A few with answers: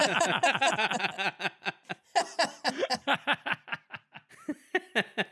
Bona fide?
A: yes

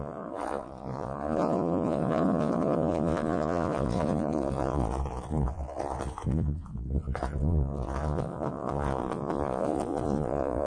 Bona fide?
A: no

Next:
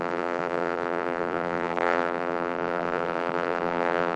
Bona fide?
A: no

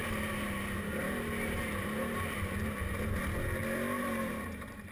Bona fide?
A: yes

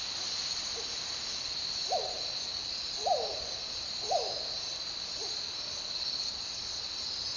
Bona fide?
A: no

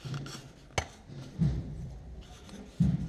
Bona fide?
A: yes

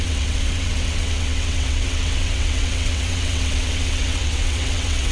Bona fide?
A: no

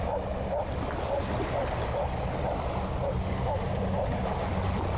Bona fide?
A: yes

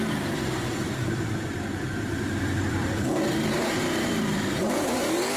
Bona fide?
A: no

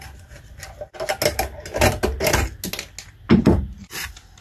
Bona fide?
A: yes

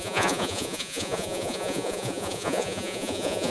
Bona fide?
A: no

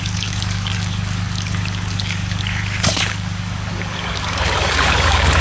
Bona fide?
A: no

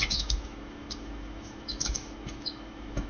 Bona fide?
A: no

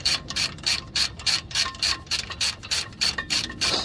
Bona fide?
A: yes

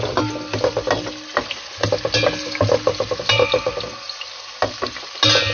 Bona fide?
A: yes